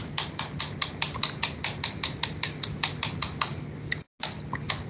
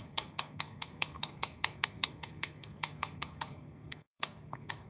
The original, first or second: first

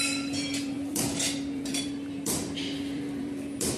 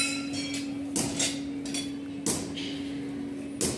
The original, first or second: second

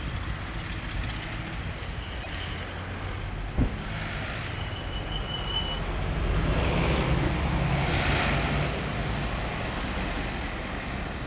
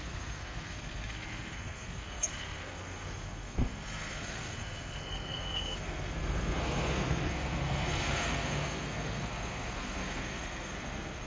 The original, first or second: first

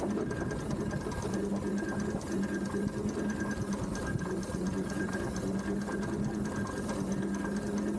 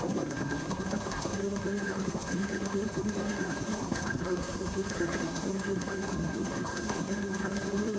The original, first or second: first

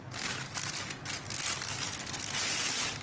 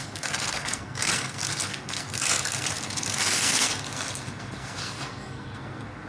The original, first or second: first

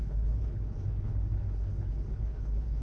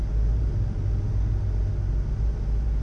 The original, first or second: second